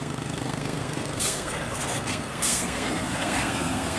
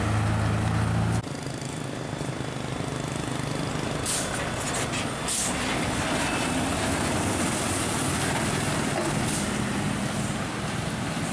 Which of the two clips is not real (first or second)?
first